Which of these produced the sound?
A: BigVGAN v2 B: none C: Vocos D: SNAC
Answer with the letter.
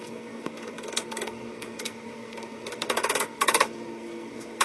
D